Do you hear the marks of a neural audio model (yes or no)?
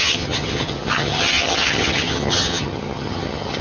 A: yes